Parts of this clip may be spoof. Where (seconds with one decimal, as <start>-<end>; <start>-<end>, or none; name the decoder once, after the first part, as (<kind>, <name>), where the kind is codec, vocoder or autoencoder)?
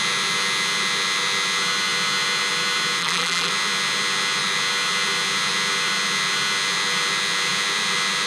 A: 3.0-3.5 (vocoder, BigVGAN v2)